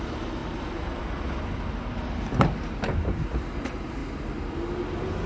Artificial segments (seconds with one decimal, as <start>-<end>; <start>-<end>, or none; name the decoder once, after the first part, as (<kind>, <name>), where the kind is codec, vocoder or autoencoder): 0.4-1.0 (vocoder, BigVGAN v2)

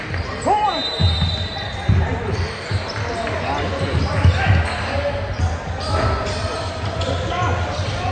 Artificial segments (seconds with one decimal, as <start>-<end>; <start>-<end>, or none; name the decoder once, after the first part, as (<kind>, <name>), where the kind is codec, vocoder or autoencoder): 2.1-2.7 (vocoder, BigVGAN v2)

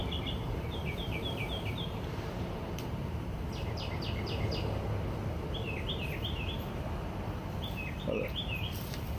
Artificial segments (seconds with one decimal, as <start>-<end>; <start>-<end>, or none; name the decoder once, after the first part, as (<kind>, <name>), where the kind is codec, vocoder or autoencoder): 0.0-3.5 (vocoder, BigVGAN v2)